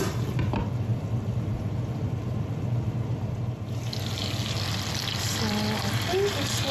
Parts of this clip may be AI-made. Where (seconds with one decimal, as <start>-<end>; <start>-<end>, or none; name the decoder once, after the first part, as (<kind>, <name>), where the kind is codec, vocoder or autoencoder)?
none